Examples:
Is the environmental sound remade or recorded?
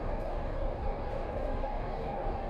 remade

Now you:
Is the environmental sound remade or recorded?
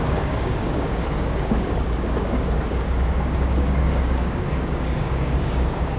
remade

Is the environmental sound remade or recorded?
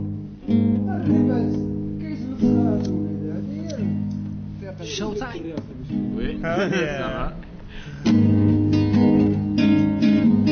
recorded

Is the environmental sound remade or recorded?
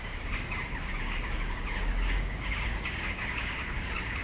remade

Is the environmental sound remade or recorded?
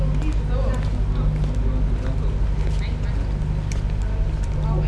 recorded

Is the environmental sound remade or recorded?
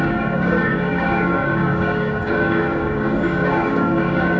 remade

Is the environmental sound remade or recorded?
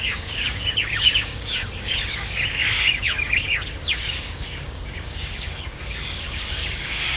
remade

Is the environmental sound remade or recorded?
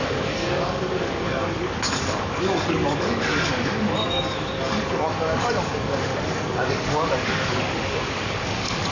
remade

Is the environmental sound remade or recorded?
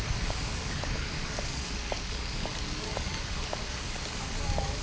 remade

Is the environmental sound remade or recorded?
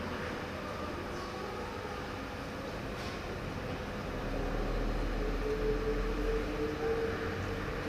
recorded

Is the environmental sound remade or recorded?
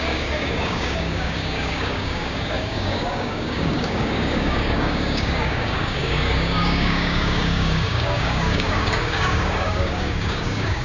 remade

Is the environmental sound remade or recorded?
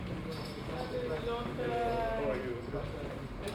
recorded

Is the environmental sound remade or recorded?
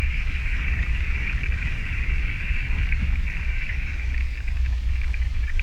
remade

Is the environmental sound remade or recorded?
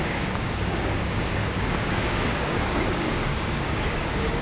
remade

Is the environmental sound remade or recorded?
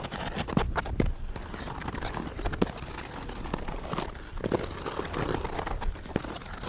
recorded